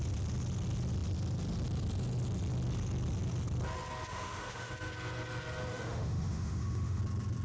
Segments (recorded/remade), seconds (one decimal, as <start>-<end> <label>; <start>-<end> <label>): 0.0-4.1 recorded; 4.1-4.7 remade; 4.7-5.7 recorded; 5.7-7.0 remade; 7.0-7.4 recorded